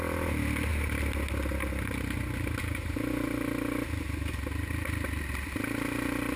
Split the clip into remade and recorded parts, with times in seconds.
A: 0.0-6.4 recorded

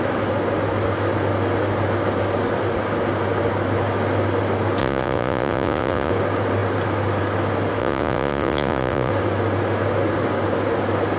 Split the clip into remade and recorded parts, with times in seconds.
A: 0.0-4.8 recorded; 4.8-6.1 remade; 6.1-7.8 recorded; 7.8-9.1 remade; 9.1-11.2 recorded

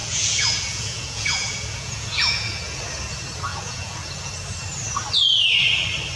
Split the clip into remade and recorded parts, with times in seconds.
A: 0.0-2.8 remade; 2.8-3.5 recorded; 3.5-4.3 remade; 4.3-6.2 recorded

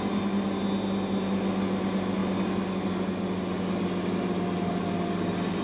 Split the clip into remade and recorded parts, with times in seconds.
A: 0.0-5.6 recorded